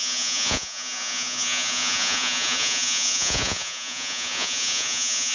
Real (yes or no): no